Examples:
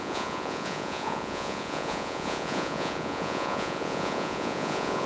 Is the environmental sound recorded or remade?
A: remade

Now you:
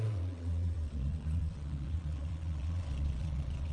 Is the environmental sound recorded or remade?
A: remade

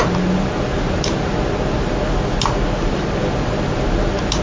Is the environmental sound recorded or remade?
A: recorded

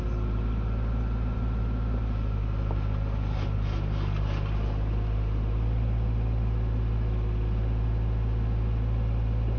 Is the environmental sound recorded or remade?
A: recorded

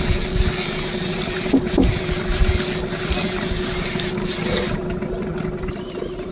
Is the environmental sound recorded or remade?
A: recorded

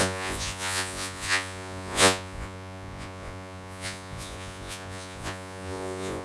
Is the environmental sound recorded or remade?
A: remade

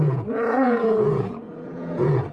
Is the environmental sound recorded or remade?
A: remade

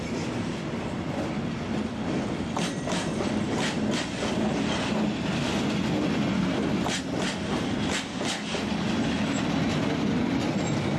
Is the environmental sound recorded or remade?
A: recorded